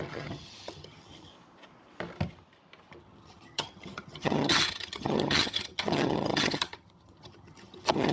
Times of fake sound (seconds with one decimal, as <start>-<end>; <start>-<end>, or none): 0.0-1.3; 3.0-8.1